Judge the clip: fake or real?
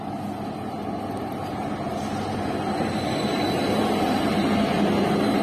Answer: real